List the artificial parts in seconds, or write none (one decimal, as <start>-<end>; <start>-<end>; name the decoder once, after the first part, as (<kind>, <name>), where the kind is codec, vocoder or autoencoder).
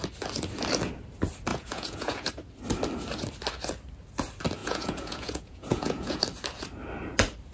1.5-2.3 (vocoder, Vocos); 4.6-6.2